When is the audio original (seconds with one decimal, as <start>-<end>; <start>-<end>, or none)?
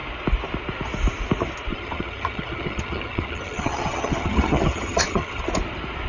0.0-1.7; 5.4-6.1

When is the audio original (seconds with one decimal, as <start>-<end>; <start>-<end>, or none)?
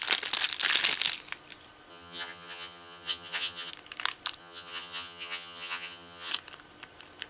0.0-1.9; 3.7-4.4; 6.3-7.3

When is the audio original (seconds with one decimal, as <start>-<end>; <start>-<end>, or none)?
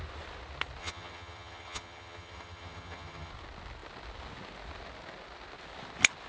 0.0-0.8; 3.3-6.3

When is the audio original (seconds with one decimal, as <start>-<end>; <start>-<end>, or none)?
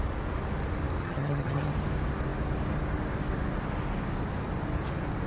0.0-1.0; 1.7-5.3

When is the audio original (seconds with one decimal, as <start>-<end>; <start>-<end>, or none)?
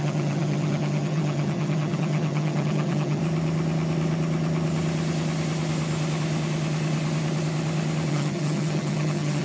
3.2-8.1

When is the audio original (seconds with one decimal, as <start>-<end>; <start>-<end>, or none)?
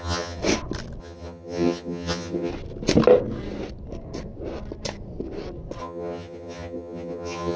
0.4-1.0; 2.5-5.8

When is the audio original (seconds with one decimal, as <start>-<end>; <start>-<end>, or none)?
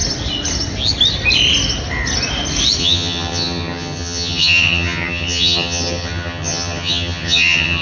0.0-2.8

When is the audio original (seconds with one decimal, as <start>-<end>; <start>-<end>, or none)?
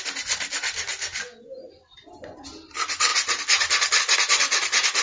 0.0-5.0